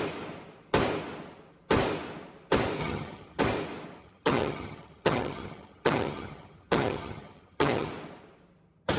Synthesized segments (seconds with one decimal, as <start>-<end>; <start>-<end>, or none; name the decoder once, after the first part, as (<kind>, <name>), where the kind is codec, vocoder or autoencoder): 2.8-3.4 (vocoder, HiFi-GAN); 4.0-7.9